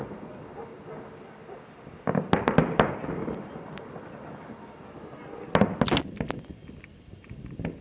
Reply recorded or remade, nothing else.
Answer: recorded